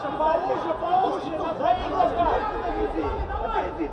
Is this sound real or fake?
fake